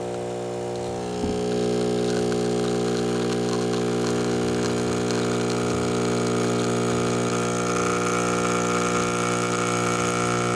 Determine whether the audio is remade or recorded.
recorded